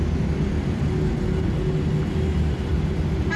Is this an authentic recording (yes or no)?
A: yes